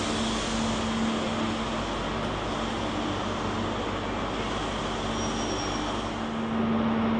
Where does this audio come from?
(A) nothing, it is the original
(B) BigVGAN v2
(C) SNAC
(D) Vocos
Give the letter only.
A